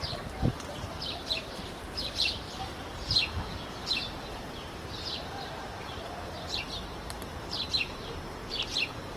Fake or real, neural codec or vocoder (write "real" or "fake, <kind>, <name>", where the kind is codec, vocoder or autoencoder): fake, vocoder, BigVGAN v2